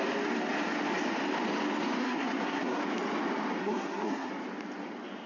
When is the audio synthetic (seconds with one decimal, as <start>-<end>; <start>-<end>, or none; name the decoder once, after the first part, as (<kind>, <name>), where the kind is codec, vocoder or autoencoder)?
2.0-2.8 (codec, SNAC); 3.6-4.3